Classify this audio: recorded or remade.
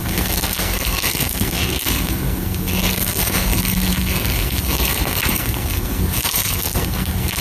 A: remade